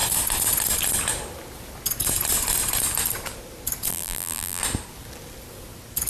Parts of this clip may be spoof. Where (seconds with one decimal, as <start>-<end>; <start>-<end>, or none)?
3.9-4.6